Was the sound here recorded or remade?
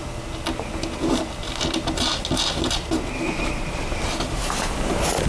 recorded